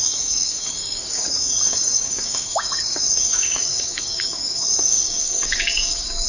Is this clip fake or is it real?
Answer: fake